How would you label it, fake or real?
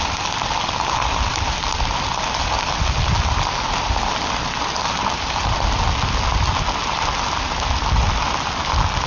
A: real